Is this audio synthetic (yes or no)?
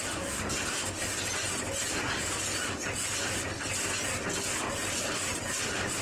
no